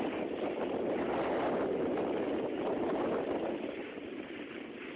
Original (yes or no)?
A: yes